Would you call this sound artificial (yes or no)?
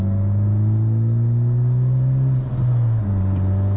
no